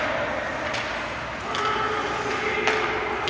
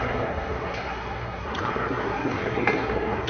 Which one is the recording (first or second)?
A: first